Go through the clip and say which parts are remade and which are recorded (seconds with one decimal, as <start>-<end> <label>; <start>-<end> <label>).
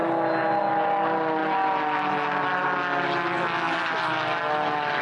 0.0-5.0 recorded